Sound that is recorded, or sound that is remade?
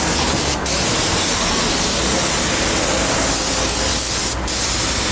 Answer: recorded